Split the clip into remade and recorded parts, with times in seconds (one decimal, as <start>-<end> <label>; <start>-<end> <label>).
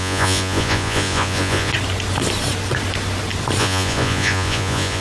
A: 0.0-1.7 remade; 1.7-3.6 recorded; 3.6-5.0 remade